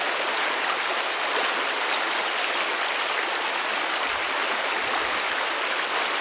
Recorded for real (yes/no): yes